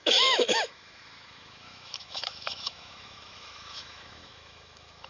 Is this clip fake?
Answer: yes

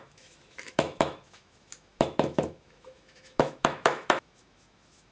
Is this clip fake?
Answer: yes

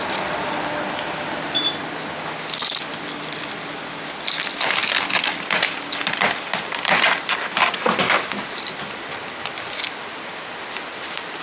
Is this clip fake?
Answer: no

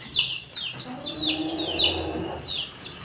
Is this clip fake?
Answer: no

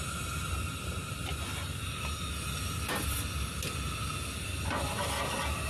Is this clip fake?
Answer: no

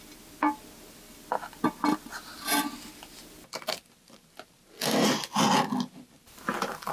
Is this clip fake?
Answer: no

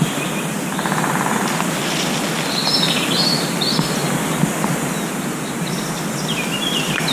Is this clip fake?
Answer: no